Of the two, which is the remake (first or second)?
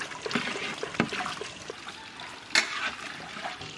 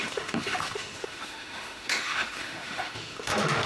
second